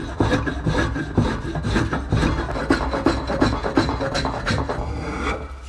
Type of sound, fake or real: real